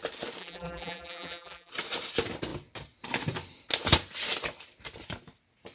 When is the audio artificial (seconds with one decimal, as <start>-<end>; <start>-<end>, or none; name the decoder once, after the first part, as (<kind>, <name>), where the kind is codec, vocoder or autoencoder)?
0.4-1.7 (vocoder, BigVGAN v2)